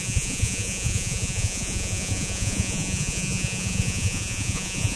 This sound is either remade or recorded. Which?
remade